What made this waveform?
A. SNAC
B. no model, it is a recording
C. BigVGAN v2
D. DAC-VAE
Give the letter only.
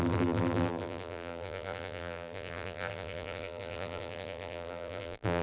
C